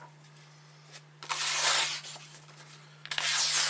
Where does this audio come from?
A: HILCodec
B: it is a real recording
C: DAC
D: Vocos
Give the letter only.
B